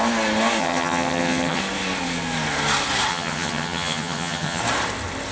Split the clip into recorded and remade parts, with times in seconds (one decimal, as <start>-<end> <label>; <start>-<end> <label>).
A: 0.0-0.6 recorded; 0.6-1.6 remade; 1.6-3.1 recorded; 3.1-4.6 remade; 4.6-5.3 recorded